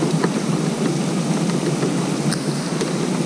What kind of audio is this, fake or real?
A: real